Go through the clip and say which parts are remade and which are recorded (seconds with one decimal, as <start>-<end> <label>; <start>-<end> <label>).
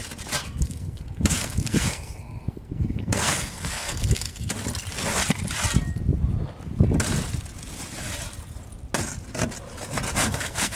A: 0.0-0.4 recorded; 0.4-4.5 remade; 4.5-10.2 recorded; 10.2-10.8 remade